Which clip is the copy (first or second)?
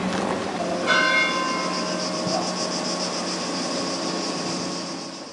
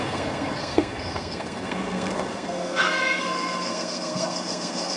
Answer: second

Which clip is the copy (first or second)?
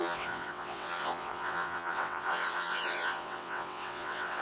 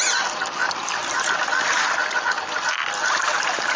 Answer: first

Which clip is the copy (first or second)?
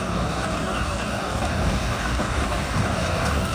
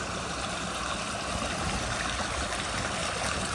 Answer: first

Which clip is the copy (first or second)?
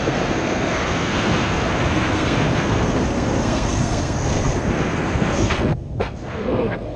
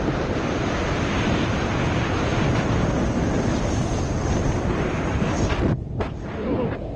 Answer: first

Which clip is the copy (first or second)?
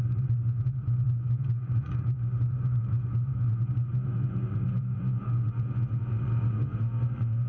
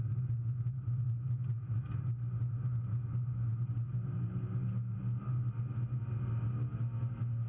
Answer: first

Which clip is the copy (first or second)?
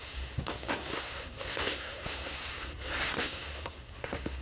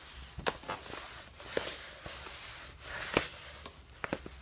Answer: first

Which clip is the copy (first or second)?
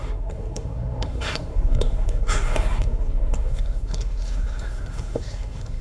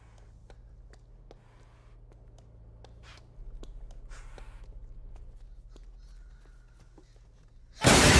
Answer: first